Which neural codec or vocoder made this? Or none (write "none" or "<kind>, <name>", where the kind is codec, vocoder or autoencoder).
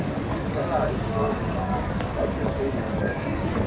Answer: codec, DAC